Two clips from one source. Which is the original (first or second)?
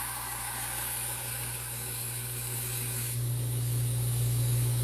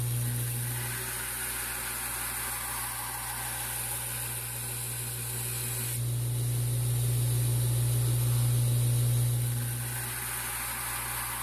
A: second